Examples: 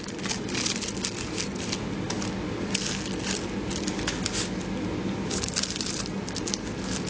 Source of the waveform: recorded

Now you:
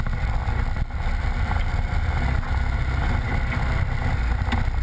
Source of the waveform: recorded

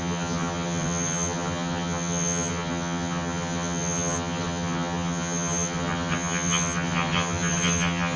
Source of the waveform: remade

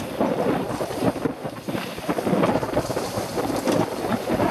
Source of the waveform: recorded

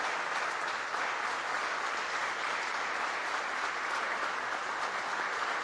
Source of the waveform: recorded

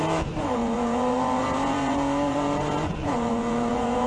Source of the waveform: remade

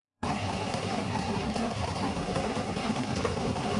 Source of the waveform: remade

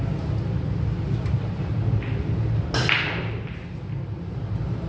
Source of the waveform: recorded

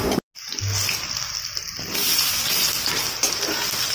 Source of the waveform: recorded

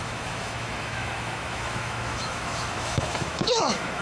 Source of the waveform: remade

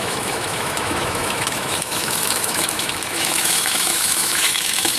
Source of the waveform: remade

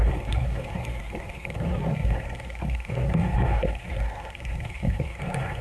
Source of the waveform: remade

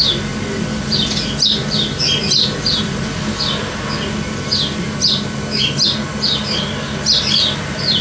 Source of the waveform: recorded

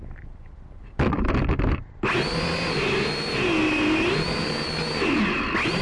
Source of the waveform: recorded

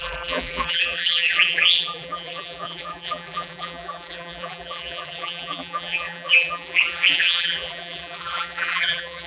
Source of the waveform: remade